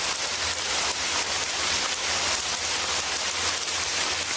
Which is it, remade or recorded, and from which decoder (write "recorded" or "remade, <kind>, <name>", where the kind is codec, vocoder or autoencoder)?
recorded